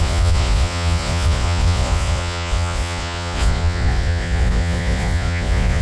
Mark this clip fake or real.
fake